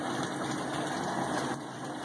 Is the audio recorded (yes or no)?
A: yes